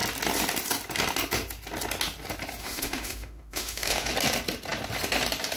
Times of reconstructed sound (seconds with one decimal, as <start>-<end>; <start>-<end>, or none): 2.6-4.1